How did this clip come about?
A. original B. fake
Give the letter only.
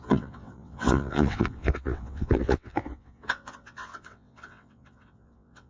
B